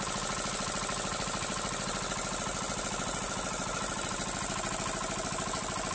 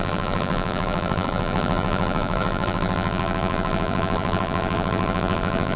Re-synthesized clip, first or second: second